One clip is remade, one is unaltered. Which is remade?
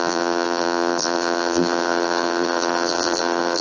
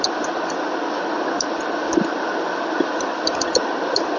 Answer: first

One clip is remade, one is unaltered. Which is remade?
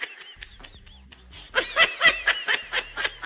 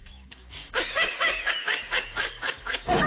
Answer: second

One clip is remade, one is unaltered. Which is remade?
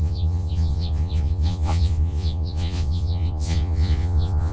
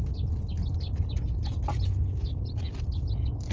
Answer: first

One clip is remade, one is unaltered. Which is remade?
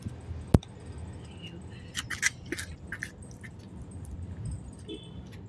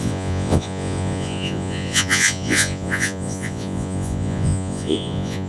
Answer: second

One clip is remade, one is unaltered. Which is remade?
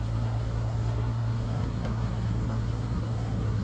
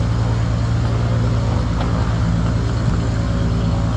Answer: first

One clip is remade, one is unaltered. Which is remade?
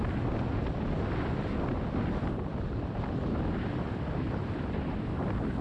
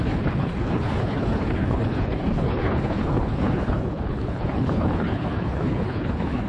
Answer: second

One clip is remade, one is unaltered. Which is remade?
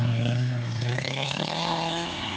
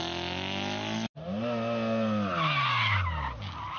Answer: first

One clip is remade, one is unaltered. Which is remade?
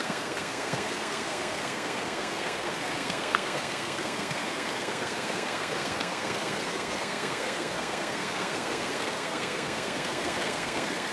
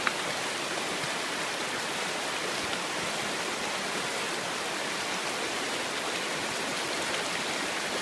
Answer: first